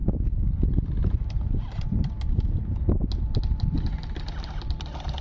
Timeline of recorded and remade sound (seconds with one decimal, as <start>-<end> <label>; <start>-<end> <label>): 0.0-5.2 recorded